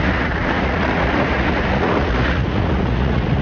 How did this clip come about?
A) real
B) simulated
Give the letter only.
B